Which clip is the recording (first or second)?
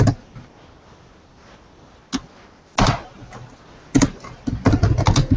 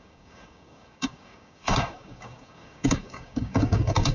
first